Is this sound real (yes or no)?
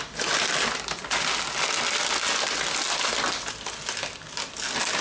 yes